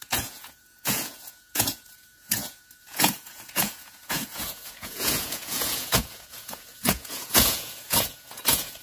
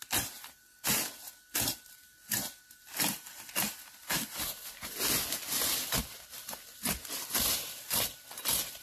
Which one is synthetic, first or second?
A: first